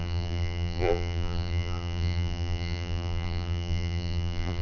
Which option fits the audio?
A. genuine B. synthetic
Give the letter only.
B